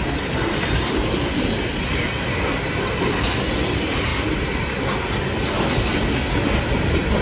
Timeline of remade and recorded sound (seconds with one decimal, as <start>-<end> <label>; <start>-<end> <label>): 0.0-7.2 recorded